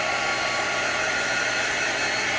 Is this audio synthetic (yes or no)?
no